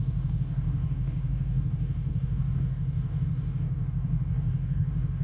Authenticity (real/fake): fake